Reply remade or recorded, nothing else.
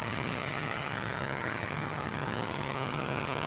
remade